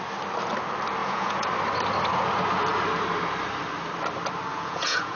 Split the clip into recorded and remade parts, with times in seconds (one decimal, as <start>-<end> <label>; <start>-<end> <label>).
0.0-1.0 recorded; 1.0-1.5 remade; 1.5-4.5 recorded; 4.5-5.2 remade